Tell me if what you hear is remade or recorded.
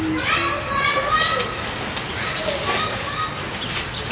recorded